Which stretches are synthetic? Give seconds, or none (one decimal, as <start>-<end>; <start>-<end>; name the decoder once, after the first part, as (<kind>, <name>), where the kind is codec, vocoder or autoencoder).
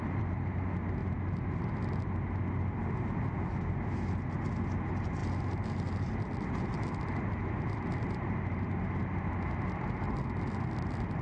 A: none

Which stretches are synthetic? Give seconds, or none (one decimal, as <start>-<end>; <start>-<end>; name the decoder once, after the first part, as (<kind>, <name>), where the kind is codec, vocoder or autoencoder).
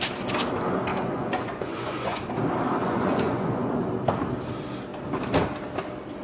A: 0.9-2.2 (vocoder, Vocos); 2.8-3.9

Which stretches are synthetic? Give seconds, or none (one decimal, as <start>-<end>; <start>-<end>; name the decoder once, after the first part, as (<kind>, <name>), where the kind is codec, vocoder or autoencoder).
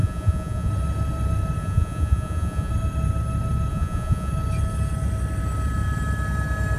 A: 0.0-0.7 (vocoder, Vocos); 1.6-2.7; 3.7-4.3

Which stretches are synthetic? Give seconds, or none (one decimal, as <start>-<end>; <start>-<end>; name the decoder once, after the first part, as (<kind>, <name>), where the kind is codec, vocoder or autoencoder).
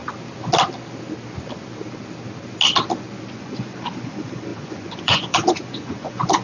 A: 3.3-6.4 (vocoder, Vocos)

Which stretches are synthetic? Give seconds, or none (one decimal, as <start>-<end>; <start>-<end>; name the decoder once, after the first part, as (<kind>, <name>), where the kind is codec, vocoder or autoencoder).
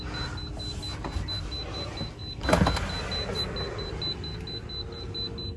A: none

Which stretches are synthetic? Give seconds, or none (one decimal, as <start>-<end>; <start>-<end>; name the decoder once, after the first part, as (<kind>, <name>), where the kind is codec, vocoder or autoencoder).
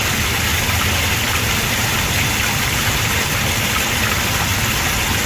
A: none